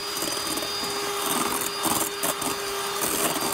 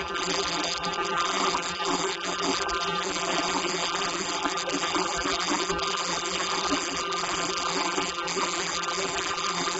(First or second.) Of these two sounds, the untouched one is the first